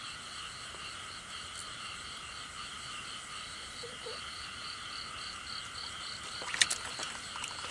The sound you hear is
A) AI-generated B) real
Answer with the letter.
B